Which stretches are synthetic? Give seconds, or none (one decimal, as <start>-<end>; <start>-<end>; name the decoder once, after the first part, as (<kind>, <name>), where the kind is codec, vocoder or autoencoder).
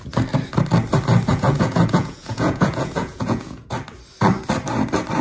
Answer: 1.3-3.7 (vocoder, Vocos)